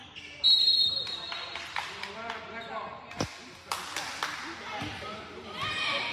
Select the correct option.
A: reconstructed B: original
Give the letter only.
B